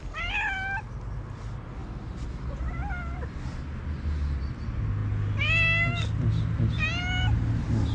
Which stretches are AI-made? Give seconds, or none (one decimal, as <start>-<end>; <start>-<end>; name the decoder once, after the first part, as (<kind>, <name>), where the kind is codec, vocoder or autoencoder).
none